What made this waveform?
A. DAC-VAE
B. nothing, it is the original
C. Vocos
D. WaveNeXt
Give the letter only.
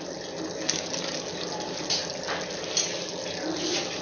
B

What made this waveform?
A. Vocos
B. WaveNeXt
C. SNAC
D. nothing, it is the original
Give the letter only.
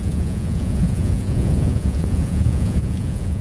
A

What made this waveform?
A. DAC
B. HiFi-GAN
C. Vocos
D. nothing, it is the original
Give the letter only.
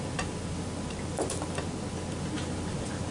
D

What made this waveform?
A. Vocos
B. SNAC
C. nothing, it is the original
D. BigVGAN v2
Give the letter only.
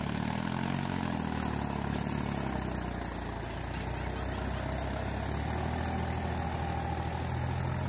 C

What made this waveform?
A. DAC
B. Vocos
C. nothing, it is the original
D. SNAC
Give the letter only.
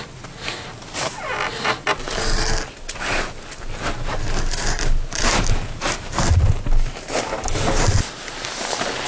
C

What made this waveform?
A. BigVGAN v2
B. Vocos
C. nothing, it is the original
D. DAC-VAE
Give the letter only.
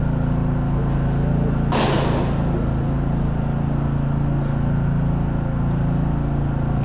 C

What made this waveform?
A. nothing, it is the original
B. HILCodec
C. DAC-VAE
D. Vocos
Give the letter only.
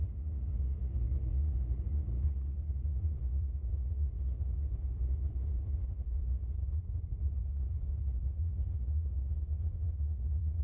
D